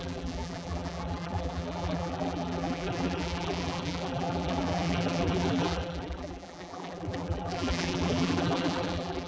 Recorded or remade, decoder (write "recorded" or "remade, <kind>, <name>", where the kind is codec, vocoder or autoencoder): remade, vocoder, BigVGAN v2